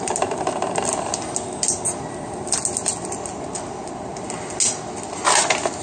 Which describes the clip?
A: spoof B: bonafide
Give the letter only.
B